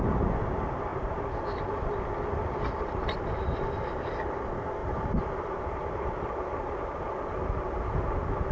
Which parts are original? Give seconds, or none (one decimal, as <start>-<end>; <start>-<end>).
0.0-0.9; 1.9-3.0; 3.6-4.8; 5.6-8.5